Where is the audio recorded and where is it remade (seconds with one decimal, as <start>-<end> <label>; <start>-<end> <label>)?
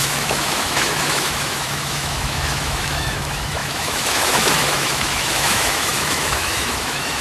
0.0-7.2 remade